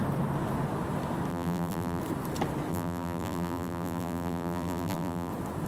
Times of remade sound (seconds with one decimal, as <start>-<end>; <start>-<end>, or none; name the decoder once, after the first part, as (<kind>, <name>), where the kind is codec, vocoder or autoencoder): 1.3-2.0 (vocoder, BigVGAN v2); 2.7-5.3

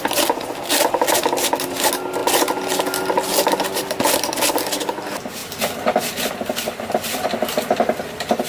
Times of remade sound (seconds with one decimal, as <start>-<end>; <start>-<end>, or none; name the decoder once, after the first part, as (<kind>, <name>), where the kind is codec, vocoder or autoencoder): none

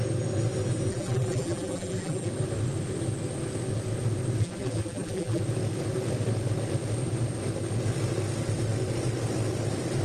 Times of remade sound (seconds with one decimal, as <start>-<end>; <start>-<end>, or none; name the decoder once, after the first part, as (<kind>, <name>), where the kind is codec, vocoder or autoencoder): 0.9-2.3 (vocoder, BigVGAN v2); 4.4-5.4

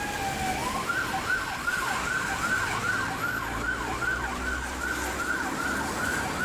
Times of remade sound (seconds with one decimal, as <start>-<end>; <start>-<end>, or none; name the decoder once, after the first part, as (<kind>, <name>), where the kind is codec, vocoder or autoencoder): none

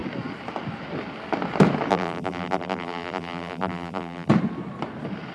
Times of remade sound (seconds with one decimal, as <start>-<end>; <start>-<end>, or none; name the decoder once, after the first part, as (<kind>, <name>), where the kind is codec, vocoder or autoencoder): 1.9-4.3 (vocoder, BigVGAN v2)

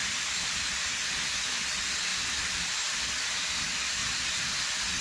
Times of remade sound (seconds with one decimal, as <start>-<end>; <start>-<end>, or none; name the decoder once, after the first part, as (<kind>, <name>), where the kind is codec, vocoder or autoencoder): 0.0-0.9 (vocoder, BigVGAN v2); 2.1-3.0; 4.0-5.0

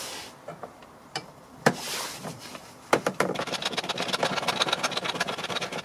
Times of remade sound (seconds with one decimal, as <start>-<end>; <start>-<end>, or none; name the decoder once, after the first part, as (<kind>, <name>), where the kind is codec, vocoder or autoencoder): 0.8-4.3 (vocoder, BigVGAN v2)

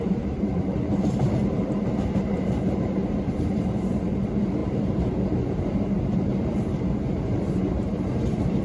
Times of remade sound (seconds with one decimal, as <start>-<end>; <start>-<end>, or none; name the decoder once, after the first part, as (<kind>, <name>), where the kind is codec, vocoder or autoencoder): 0.0-8.6 (vocoder, BigVGAN v2)